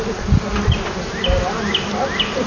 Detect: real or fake real